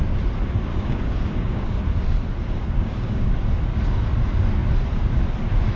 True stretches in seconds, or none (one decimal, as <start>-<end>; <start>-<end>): 0.0-0.7; 1.8-2.6; 3.3-5.8